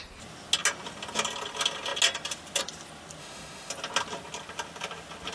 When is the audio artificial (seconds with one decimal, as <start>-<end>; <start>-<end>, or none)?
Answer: 3.2-3.7